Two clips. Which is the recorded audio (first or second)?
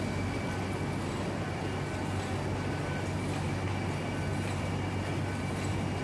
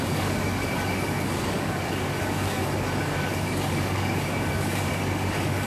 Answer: first